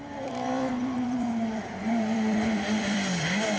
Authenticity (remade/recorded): remade